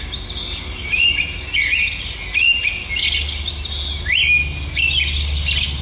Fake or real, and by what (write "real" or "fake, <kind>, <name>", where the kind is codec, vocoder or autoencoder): real